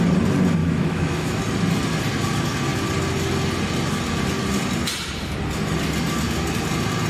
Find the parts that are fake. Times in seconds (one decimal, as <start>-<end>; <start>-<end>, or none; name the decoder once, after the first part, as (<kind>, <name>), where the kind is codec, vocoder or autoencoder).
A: 0.6-1.4 (autoencoder, DAC-VAE)